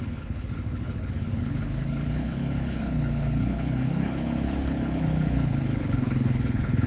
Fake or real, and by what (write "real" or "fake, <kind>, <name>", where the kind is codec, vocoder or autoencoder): fake, codec, HILCodec